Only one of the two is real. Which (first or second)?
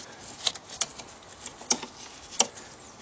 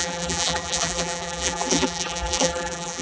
first